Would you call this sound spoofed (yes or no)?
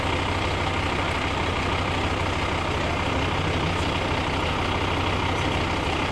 no